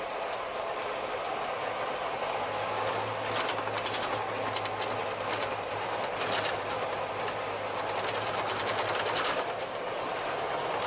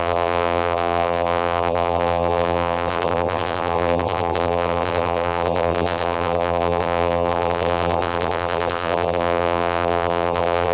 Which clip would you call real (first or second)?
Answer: first